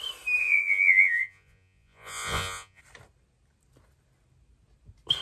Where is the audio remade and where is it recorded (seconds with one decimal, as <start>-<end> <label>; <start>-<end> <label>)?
0.0-0.4 recorded; 0.4-2.8 remade; 2.8-5.2 recorded

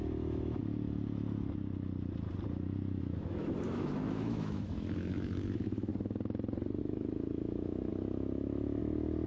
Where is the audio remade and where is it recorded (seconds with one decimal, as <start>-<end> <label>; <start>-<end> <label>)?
0.0-0.6 remade; 0.6-3.0 recorded; 3.0-5.9 remade; 5.9-6.8 recorded; 6.8-9.3 remade

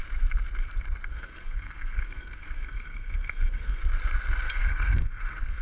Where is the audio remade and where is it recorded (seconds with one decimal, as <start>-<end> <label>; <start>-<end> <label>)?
0.0-1.1 recorded; 1.1-3.8 remade; 3.8-4.6 recorded; 4.6-5.6 remade

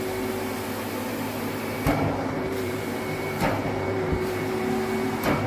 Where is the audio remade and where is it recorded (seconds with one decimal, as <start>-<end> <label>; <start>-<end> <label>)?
0.0-1.1 recorded; 1.1-4.4 remade; 4.4-5.5 recorded

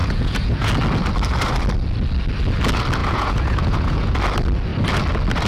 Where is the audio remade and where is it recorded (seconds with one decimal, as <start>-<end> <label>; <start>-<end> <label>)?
0.0-0.7 remade; 0.7-3.0 recorded; 3.0-4.1 remade; 4.1-5.5 recorded

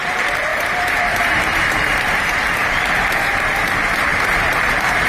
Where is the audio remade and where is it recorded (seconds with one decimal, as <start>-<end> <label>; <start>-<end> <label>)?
0.0-5.1 remade

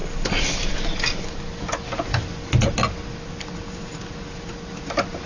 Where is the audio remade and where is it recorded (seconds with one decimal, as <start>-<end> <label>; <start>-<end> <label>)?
0.0-5.3 recorded

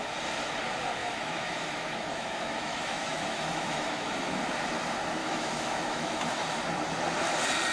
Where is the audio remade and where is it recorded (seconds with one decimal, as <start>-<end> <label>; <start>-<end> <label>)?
0.0-1.0 recorded; 1.0-4.4 remade; 4.4-5.2 recorded; 5.2-6.6 remade; 6.6-7.7 recorded